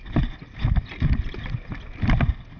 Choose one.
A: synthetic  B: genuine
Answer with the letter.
B